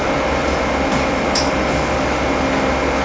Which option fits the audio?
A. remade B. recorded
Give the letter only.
B